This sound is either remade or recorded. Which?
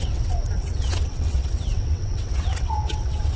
remade